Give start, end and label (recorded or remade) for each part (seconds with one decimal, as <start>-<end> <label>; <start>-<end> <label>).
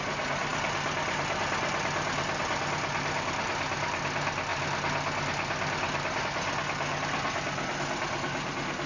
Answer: 0.0-8.9 recorded